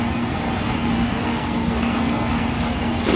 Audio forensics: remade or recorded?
remade